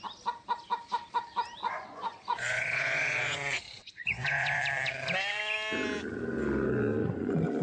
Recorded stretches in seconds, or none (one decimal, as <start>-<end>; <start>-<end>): 0.0-1.6; 4.6-7.0